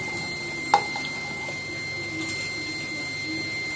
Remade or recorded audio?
recorded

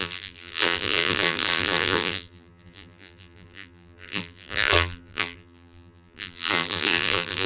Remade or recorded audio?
remade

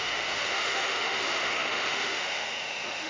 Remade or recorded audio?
remade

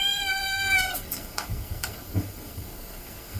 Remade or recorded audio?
remade